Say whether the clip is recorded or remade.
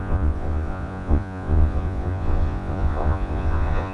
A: remade